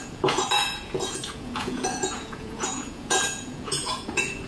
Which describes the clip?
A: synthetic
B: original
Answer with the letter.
A